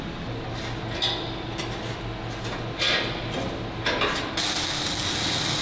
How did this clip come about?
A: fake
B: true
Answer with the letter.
B